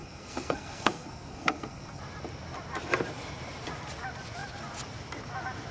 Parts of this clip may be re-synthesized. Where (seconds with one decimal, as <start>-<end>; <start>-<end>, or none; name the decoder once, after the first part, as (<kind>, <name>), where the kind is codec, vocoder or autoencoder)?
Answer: 0.0-2.0 (codec, SNAC)